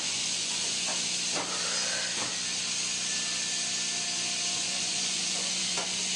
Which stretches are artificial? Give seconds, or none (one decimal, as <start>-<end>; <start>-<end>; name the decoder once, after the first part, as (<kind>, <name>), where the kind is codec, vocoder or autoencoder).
0.0-0.9 (vocoder, Vocos); 4.5-6.2